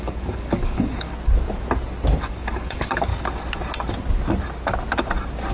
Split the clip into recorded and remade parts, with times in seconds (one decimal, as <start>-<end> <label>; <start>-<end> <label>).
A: 0.0-1.1 remade; 1.1-2.2 recorded; 2.2-3.1 remade; 3.1-5.5 recorded